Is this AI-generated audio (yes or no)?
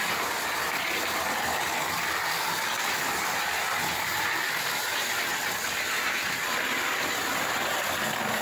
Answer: no